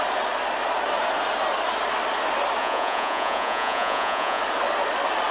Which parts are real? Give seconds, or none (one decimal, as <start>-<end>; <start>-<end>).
0.0-2.6; 4.4-5.3